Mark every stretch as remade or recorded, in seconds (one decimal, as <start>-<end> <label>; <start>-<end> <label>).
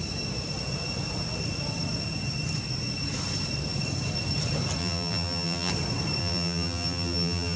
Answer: 0.0-4.8 recorded; 4.8-5.7 remade; 5.7-6.2 recorded; 6.2-7.6 remade